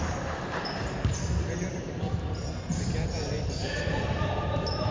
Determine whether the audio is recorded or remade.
remade